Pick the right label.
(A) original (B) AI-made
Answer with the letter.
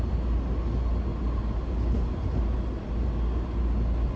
A